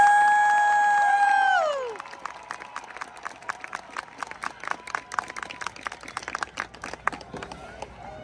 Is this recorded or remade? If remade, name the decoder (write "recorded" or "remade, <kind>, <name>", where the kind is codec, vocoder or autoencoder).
recorded